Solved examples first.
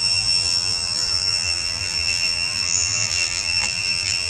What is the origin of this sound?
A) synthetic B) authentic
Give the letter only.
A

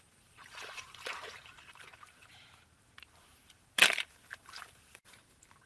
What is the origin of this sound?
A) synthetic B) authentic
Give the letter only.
A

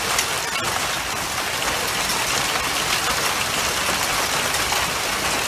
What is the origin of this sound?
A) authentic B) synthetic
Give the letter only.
A